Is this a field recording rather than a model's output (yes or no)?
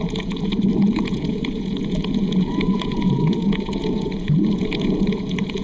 no